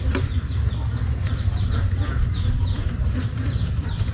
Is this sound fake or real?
real